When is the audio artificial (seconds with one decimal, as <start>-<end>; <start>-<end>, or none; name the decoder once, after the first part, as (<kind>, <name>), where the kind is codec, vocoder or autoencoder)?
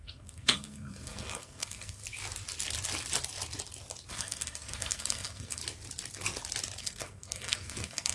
0.0-2.0 (codec, SNAC); 4.1-5.6; 6.8-8.1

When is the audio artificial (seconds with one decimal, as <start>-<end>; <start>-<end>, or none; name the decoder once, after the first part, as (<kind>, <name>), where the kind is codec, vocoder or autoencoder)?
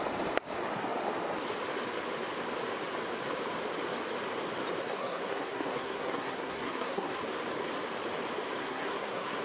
4.8-7.1 (codec, SNAC); 8.6-9.4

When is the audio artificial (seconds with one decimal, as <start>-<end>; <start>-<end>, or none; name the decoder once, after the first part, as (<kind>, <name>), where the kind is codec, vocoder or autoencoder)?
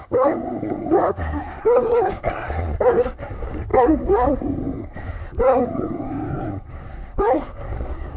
0.0-8.2 (codec, SNAC)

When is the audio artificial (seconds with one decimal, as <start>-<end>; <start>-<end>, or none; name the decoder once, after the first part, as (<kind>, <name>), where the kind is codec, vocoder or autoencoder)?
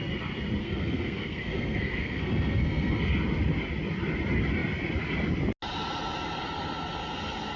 0.6-3.0 (codec, SNAC)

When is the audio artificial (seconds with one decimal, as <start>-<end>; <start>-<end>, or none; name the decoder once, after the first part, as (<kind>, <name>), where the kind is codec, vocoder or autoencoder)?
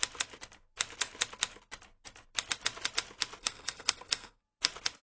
3.4-4.4 (codec, SNAC)